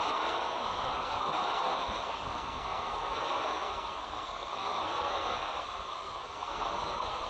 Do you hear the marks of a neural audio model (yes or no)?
yes